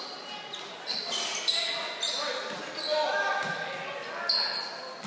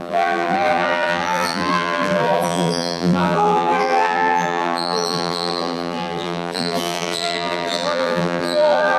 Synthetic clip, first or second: second